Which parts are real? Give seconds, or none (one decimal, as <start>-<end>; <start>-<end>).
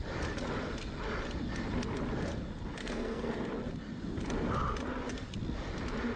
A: 0.0-2.8; 3.3-6.2